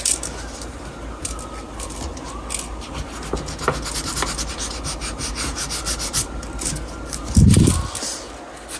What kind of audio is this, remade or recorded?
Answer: recorded